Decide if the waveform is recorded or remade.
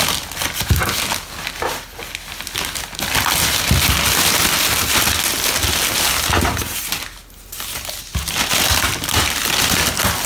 recorded